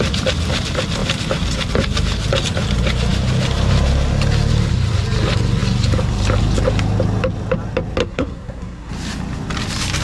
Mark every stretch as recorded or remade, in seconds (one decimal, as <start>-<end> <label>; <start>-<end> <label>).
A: 0.0-8.0 recorded; 8.0-8.9 remade; 8.9-10.0 recorded